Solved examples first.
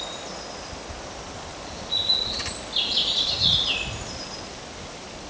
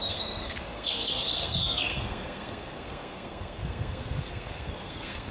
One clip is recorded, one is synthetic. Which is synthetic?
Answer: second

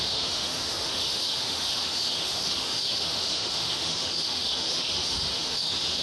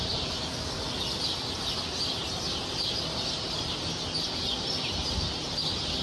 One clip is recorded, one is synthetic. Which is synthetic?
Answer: first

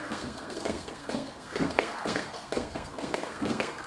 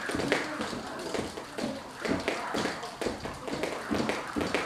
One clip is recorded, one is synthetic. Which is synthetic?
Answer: first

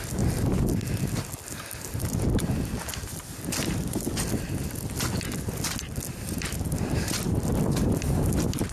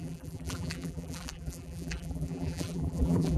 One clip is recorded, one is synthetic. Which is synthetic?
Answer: second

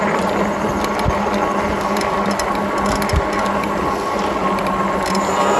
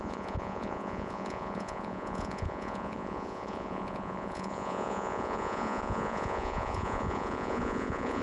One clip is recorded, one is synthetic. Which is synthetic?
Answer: second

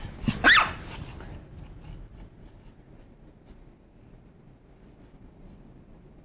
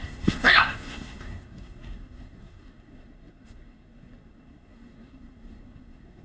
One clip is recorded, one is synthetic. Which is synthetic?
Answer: second